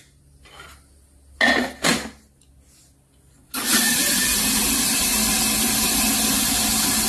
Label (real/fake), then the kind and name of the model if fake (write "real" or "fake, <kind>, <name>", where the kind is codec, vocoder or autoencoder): real